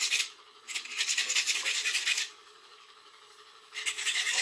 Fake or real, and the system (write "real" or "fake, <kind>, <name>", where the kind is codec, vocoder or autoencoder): fake, codec, DAC